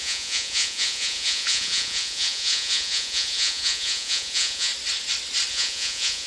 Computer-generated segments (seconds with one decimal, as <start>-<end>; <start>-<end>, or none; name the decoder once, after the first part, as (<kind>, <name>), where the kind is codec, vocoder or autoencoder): 0.0-4.7 (vocoder, Vocos); 5.5-6.3